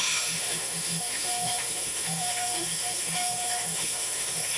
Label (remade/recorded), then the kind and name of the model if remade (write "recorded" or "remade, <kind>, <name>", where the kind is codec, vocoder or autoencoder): remade, autoencoder, DAC-VAE